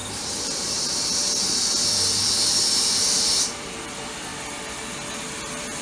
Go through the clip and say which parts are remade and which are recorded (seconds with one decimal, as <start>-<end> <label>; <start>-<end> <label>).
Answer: 0.0-4.3 remade; 4.3-5.1 recorded; 5.1-5.8 remade